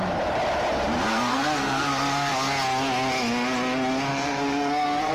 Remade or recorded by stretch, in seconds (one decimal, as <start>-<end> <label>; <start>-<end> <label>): 0.0-1.1 recorded; 1.1-2.3 remade; 2.3-4.1 recorded; 4.1-5.1 remade